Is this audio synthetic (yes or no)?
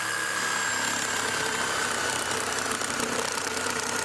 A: yes